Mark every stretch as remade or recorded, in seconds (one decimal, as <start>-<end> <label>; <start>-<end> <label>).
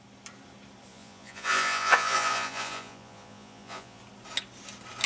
0.0-0.9 recorded; 0.9-4.0 remade; 4.0-5.1 recorded